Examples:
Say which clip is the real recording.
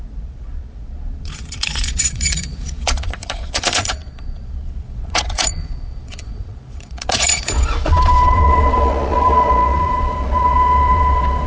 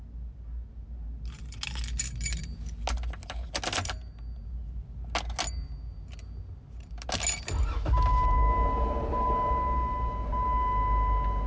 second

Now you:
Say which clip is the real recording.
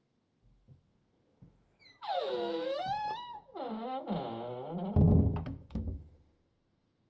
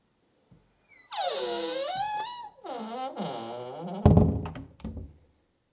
second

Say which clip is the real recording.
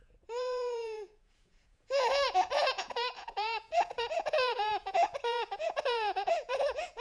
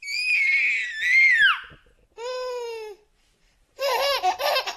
second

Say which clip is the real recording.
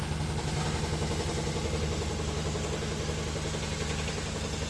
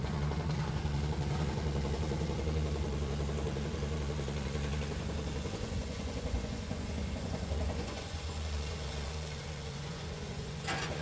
first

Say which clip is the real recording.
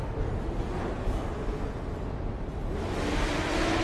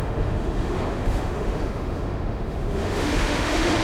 first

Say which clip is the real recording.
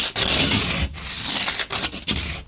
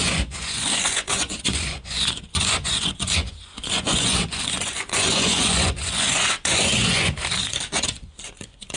first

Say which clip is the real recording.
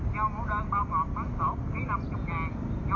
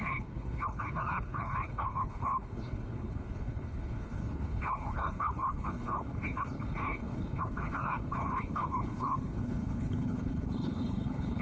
first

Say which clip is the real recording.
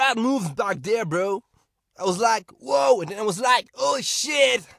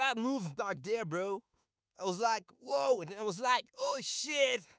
first